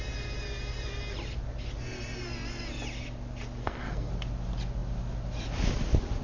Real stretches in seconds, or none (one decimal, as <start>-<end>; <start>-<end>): 0.0-3.6; 4.1-6.2